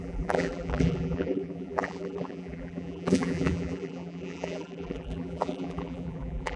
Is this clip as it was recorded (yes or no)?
no